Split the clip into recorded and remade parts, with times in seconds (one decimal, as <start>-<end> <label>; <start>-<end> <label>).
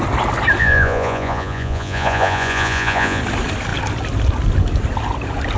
0.0-0.6 recorded; 0.6-3.2 remade; 3.2-5.6 recorded